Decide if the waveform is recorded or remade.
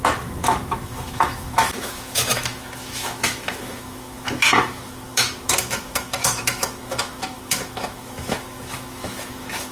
remade